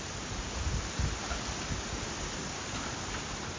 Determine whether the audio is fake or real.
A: real